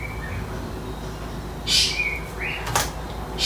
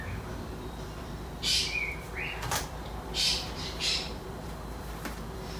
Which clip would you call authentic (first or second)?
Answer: first